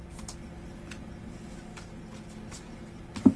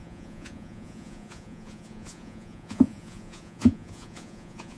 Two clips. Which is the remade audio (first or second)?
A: second